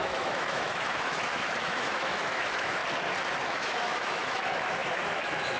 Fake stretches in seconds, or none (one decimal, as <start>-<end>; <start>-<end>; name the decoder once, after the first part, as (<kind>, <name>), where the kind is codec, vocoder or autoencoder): 0.0-2.8 (autoencoder, DAC-VAE); 3.5-5.6